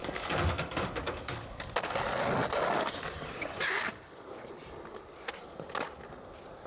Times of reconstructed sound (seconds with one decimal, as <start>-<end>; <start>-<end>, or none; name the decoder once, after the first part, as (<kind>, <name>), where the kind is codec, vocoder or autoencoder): 0.0-1.6 (codec, DAC)